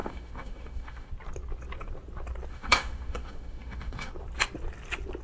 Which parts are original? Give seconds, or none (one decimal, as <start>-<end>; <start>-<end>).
1.1-2.5; 4.1-5.2